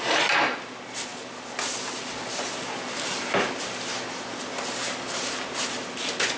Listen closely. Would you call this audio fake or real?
real